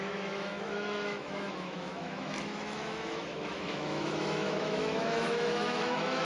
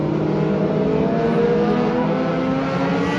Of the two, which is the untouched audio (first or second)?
second